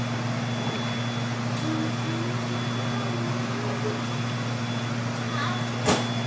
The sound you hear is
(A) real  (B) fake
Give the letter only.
A